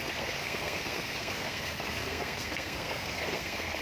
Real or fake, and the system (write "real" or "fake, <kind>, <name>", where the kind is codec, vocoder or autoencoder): fake, codec, SNAC